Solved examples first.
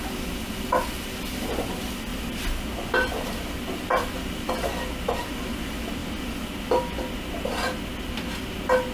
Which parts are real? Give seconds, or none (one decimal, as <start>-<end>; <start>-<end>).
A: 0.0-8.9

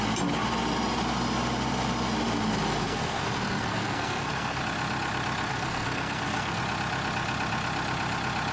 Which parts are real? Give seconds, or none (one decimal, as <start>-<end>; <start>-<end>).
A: 0.0-2.8; 4.6-5.5; 6.6-8.5

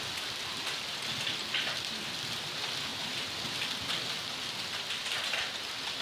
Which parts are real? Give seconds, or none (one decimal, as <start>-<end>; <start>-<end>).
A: 0.0-6.0